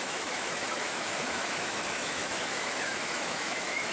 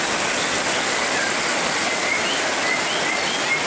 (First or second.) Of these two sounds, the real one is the second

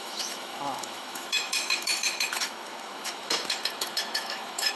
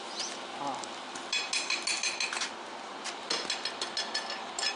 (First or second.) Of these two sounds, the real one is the second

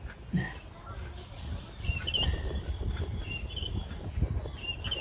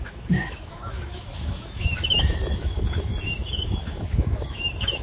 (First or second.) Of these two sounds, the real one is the first